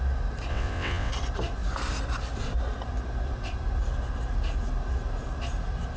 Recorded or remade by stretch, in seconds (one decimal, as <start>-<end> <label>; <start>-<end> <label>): 0.0-0.5 recorded; 0.5-1.1 remade; 1.1-6.0 recorded